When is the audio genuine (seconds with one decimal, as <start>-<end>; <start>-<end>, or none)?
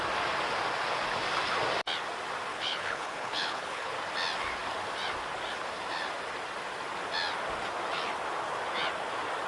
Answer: 0.0-2.5; 3.9-9.5